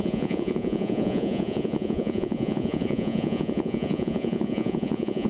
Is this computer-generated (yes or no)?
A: yes